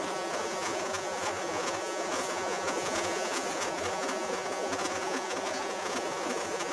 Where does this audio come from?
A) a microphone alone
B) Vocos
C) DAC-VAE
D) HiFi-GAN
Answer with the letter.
B